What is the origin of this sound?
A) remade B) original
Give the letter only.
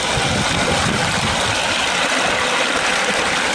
B